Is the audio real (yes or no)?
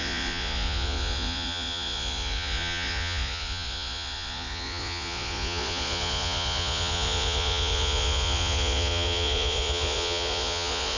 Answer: no